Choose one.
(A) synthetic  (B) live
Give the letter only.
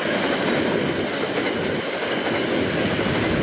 B